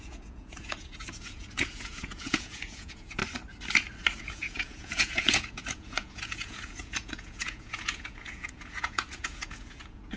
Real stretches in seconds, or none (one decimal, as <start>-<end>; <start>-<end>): 3.2-4.2